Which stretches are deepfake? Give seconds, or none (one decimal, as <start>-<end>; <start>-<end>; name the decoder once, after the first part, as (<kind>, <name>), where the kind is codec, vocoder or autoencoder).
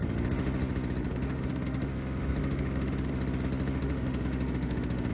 1.0-1.9 (autoencoder, DAC-VAE); 2.4-3.1; 3.8-5.1